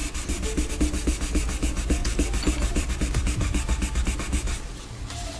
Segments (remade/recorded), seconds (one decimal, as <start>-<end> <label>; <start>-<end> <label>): 0.0-2.0 recorded; 2.0-2.9 remade; 2.9-5.4 recorded